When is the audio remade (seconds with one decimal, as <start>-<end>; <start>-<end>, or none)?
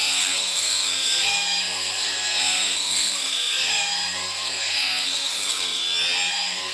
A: 0.0-5.8; 6.3-6.7